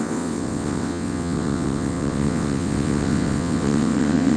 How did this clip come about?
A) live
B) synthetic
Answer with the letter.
B